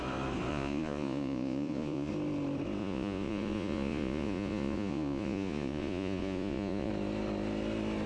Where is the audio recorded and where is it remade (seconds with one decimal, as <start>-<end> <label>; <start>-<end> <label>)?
0.0-0.5 recorded; 0.5-2.1 remade; 2.1-2.8 recorded; 2.8-6.9 remade; 6.9-8.1 recorded